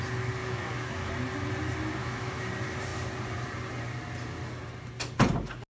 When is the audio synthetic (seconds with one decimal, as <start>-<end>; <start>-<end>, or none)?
0.4-1.1; 2.0-2.5

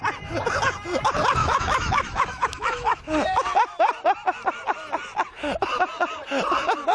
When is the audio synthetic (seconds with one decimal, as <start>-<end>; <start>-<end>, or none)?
1.4-3.0

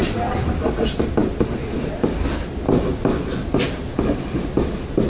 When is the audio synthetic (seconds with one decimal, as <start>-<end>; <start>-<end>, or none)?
none

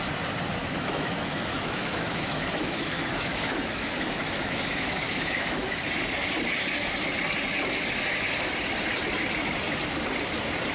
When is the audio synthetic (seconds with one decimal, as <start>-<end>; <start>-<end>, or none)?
0.6-5.6

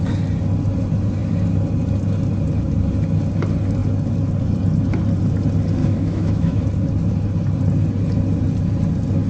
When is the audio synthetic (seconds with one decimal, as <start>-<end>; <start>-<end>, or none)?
5.8-6.6